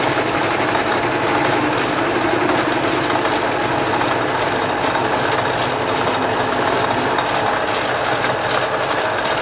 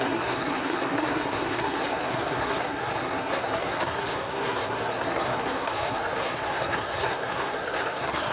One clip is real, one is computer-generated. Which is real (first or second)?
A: first